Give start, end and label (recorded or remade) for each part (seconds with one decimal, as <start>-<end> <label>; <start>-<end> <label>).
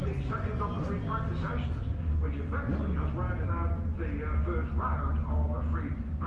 0.0-6.3 recorded